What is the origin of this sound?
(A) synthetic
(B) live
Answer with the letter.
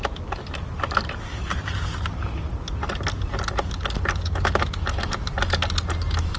B